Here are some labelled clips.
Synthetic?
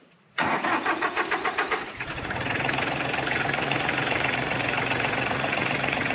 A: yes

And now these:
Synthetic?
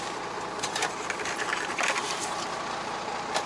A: no